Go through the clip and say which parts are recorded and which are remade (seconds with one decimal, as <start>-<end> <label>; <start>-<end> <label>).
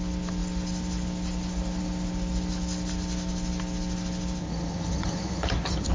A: 0.0-4.4 recorded; 4.4-5.9 remade